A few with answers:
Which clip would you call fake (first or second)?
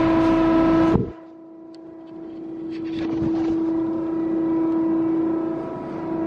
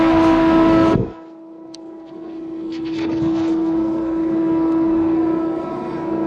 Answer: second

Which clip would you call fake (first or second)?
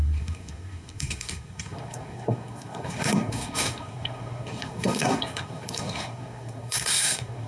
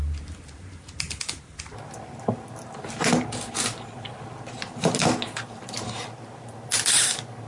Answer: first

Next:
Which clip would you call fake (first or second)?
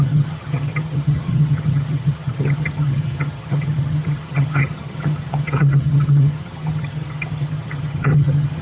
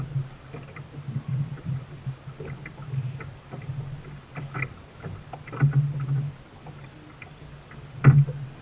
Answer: first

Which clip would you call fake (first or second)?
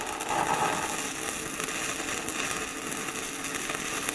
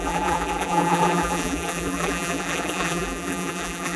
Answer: second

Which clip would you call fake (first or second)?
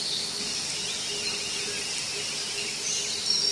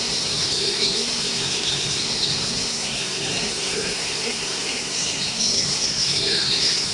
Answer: second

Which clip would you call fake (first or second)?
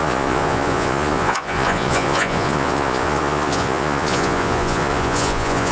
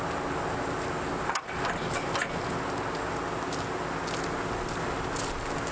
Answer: first